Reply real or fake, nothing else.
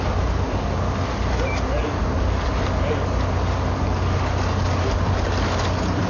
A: real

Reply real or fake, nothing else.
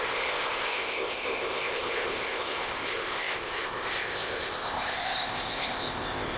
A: fake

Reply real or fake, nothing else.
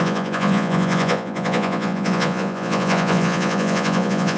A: fake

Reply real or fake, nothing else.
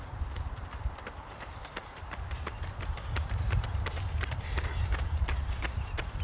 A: fake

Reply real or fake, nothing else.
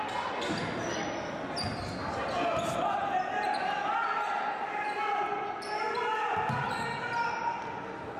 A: real